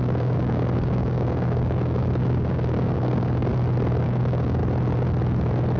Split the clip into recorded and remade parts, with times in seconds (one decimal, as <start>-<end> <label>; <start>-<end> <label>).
0.0-3.5 remade; 3.5-4.0 recorded; 4.0-4.6 remade; 4.6-5.8 recorded